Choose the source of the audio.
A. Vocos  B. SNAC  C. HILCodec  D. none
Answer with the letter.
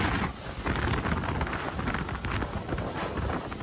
D